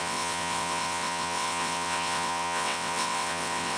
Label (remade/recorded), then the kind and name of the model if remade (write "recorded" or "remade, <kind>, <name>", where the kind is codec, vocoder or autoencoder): remade, vocoder, WaveNeXt